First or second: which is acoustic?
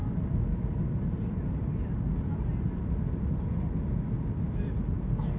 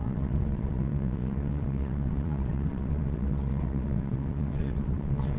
first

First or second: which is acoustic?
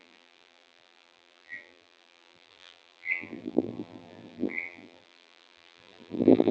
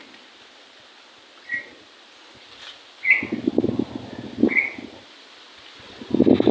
second